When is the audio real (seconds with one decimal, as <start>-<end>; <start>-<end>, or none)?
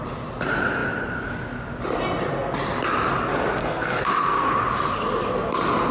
0.0-3.6; 4.5-5.9